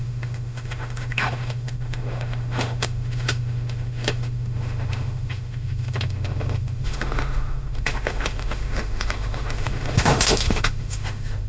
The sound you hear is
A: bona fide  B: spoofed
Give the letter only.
B